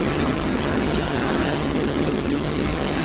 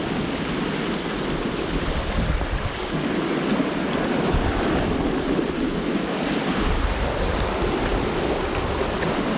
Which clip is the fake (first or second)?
first